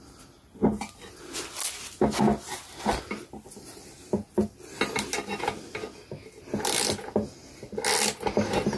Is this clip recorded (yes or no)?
yes